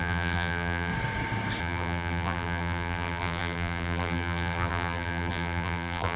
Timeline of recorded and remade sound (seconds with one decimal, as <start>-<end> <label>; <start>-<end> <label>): 0.0-0.9 remade; 0.9-1.6 recorded; 1.6-6.2 remade